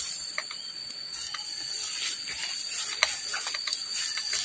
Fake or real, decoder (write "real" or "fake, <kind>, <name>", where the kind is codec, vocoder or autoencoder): real